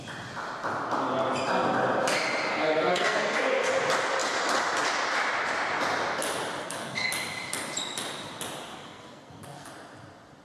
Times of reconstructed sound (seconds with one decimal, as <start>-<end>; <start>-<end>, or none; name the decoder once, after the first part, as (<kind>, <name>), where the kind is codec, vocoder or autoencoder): 2.5-3.7 (codec, SNAC); 6.6-7.1; 8.7-9.7